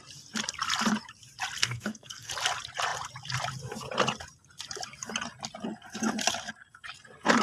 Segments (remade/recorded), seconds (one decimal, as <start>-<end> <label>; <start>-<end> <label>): 0.0-1.6 recorded; 1.6-2.3 remade; 2.3-7.4 recorded